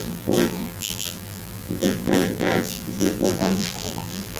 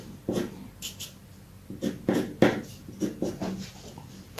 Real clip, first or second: second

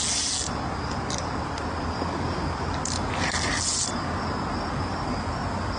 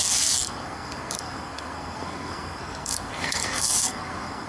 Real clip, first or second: first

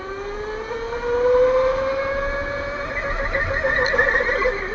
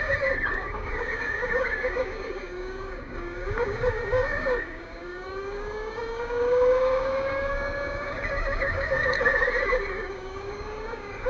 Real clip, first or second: first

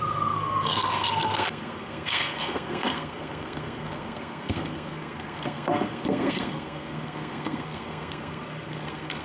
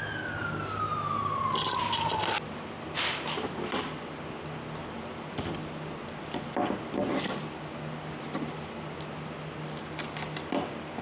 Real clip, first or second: second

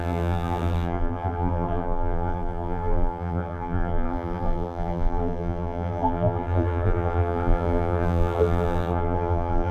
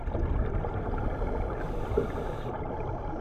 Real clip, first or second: second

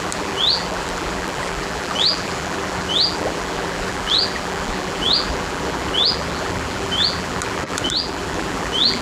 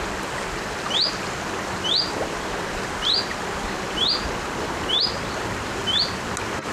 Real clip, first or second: second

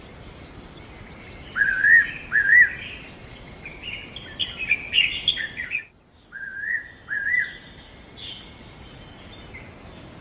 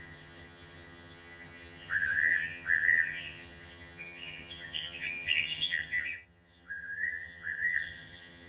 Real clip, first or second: first